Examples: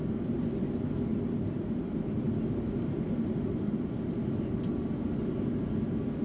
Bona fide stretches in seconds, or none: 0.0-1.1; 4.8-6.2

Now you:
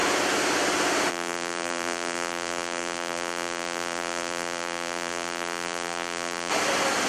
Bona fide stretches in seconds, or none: 0.0-1.1; 6.5-7.1

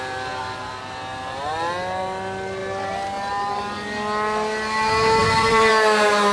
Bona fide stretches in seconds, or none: 0.0-5.2; 5.7-6.3

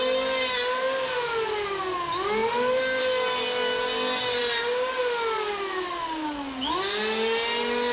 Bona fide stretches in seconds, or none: 0.0-7.9